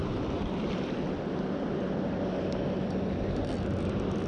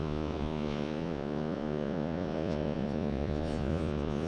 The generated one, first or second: second